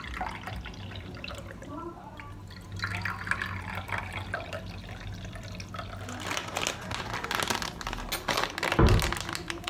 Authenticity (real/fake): real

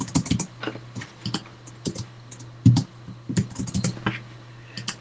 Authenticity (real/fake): real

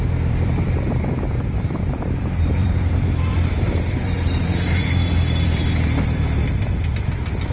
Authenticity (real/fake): fake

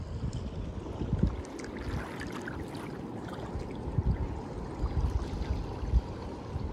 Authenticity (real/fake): real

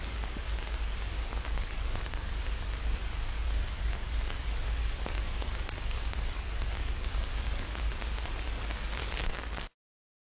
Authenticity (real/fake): fake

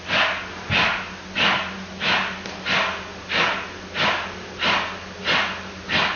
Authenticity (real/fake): real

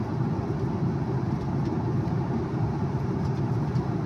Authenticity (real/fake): real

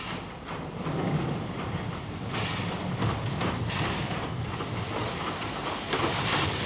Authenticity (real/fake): fake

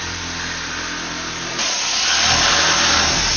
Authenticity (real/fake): real